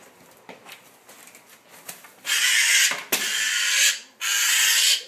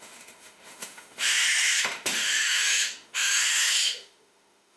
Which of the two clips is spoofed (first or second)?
second